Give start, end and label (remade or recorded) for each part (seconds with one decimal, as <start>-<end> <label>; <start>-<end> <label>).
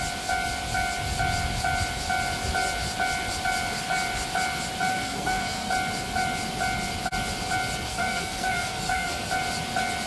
0.0-4.9 recorded; 4.9-5.7 remade; 5.7-7.9 recorded; 7.9-9.3 remade; 9.3-10.1 recorded